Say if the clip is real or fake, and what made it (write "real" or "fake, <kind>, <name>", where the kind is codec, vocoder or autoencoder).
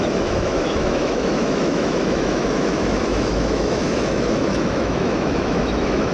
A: fake, autoencoder, DAC-VAE